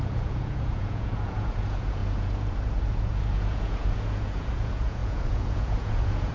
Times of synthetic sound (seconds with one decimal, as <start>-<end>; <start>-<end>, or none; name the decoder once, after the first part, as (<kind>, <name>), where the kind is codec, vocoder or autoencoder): 0.0-6.3 (vocoder, Vocos)